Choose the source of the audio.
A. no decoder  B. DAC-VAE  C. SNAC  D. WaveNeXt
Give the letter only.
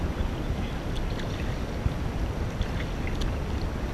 A